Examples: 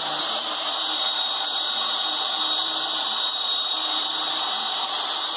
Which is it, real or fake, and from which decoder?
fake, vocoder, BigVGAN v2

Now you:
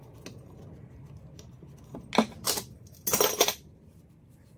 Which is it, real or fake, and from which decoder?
real